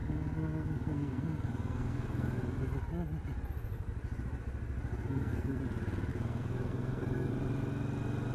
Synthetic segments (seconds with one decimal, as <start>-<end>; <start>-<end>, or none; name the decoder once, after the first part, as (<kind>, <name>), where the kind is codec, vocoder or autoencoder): 0.0-2.4 (codec, SNAC); 4.9-5.6; 6.1-7.3